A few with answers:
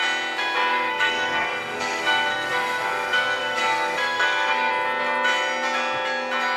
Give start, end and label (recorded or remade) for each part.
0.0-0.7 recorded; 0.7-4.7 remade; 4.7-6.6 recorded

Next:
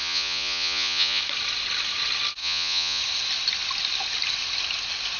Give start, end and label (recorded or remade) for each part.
0.0-1.2 remade; 1.2-2.4 recorded; 2.4-3.0 remade; 3.0-5.2 recorded